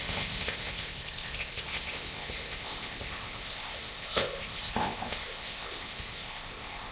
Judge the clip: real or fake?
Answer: fake